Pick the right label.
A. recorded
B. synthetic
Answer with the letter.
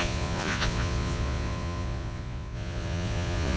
B